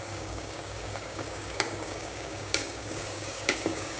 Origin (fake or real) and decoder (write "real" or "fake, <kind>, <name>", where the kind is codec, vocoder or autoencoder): fake, codec, DAC